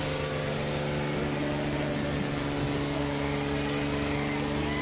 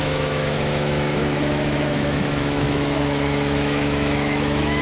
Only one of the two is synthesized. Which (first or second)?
second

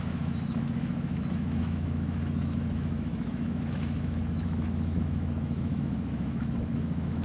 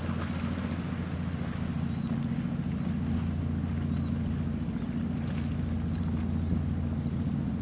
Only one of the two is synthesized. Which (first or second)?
first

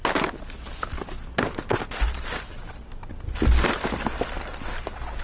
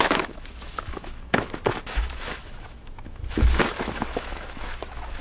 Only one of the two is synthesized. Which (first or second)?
second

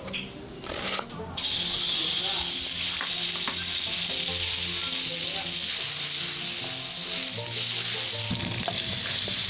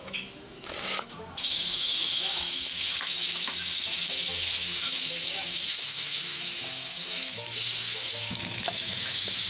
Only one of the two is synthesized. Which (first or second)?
second